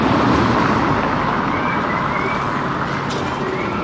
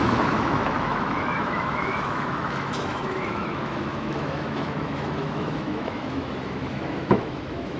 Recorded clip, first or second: first